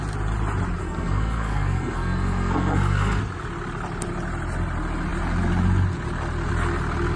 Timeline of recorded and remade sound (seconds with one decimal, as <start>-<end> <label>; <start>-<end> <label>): 0.0-0.8 recorded; 0.8-3.2 remade; 3.2-7.2 recorded